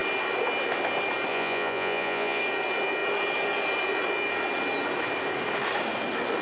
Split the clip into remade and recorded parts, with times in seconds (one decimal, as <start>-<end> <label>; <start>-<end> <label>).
0.0-1.3 recorded; 1.3-2.4 remade; 2.4-6.4 recorded